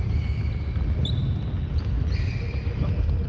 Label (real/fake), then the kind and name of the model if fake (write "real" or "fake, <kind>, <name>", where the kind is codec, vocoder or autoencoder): real